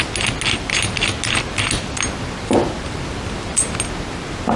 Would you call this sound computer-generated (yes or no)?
no